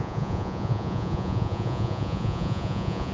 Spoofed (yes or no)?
yes